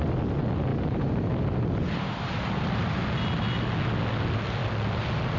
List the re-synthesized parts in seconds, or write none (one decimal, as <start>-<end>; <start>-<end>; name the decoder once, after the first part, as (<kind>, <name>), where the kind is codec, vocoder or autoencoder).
0.7-3.0 (vocoder, BigVGAN v2)